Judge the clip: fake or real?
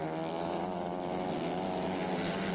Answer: real